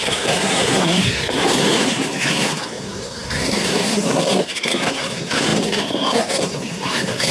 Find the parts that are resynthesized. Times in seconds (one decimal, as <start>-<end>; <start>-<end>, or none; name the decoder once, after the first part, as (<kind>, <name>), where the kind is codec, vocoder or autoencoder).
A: 0.0-7.3 (codec, SNAC)